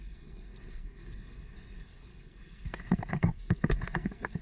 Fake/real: fake